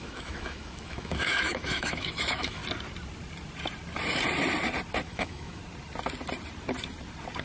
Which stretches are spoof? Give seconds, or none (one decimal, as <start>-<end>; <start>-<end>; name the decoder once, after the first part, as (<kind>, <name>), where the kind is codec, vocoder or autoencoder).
0.0-2.6 (autoencoder, DAC-VAE); 5.1-5.6